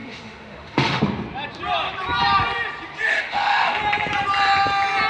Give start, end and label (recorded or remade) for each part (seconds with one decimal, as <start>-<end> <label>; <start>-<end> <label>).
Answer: 0.0-1.0 remade; 1.0-3.1 recorded; 3.1-3.8 remade; 3.8-5.1 recorded